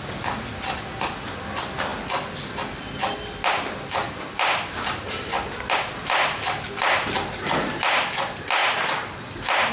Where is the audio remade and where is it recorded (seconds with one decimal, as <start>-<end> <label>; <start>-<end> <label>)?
0.0-9.7 recorded

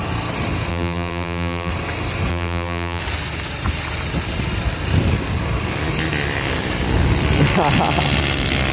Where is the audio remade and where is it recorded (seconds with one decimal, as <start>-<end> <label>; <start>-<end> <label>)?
0.0-0.7 recorded; 0.7-1.7 remade; 1.7-2.3 recorded; 2.3-3.0 remade; 3.0-8.7 recorded

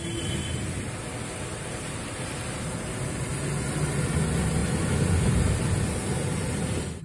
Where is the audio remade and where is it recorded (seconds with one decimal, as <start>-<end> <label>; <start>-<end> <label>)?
0.0-7.0 recorded

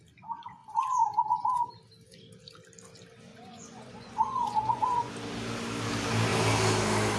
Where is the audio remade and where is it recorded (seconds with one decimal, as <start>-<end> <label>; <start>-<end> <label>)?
0.0-0.6 recorded; 0.6-1.7 remade; 1.7-3.3 recorded; 3.3-5.1 remade; 5.1-7.2 recorded

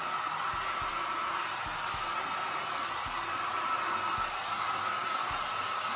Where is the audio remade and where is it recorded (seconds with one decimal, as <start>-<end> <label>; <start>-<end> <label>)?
0.0-6.0 recorded

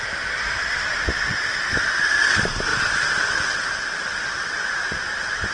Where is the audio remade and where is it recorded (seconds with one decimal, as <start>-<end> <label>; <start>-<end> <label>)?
0.0-5.5 recorded

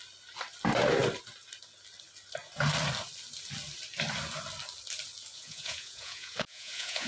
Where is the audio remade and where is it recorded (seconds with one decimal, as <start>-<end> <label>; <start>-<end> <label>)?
0.0-5.3 recorded; 5.3-7.1 remade